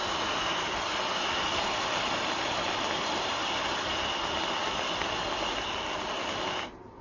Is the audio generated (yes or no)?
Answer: no